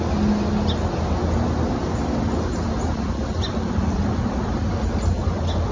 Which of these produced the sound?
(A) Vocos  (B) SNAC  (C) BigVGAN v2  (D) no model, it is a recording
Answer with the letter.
D